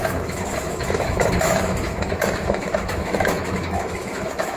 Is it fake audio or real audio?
fake